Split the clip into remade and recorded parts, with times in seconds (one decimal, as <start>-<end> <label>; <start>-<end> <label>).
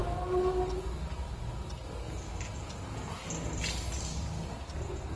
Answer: 0.0-5.2 recorded